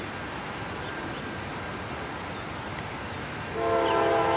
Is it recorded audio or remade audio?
recorded